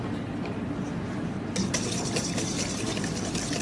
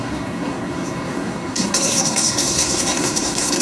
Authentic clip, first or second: first